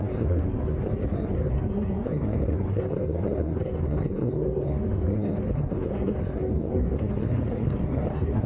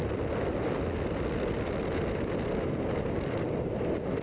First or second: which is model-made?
first